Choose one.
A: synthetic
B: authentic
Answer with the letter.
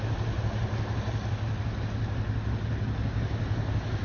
B